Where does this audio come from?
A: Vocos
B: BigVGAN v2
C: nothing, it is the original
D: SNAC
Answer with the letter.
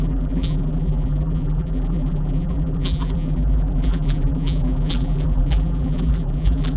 B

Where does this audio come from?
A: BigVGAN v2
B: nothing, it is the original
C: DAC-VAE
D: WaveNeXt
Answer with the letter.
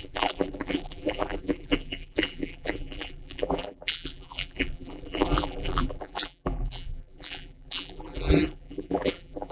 A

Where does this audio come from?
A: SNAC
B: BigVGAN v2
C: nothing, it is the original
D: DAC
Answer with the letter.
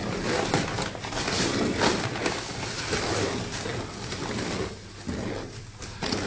C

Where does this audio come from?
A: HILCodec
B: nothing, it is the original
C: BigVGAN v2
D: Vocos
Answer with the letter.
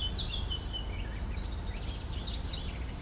C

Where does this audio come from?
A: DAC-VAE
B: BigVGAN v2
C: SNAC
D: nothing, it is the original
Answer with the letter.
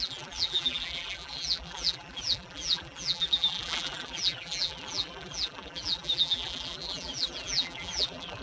B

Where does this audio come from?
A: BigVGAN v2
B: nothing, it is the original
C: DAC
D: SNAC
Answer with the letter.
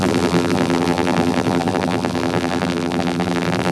A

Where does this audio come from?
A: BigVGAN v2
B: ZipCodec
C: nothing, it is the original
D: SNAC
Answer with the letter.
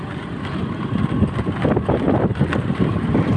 A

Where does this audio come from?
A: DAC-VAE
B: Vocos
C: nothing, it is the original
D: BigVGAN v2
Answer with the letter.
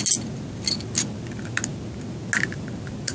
C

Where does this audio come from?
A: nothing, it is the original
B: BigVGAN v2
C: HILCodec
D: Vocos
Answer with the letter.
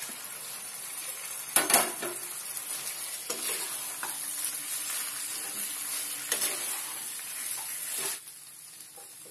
A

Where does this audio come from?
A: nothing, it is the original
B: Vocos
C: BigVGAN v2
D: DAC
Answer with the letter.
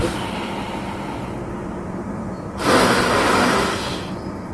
A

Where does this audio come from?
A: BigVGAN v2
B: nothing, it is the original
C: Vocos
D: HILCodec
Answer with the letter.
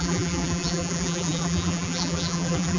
A